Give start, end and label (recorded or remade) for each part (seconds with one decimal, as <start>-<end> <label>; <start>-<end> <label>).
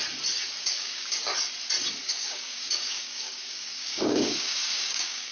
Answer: 0.0-0.6 recorded; 0.6-1.2 remade; 1.2-2.0 recorded; 2.0-5.3 remade